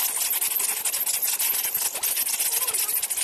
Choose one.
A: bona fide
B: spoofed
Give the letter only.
A